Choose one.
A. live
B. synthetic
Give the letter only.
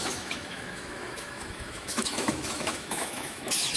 B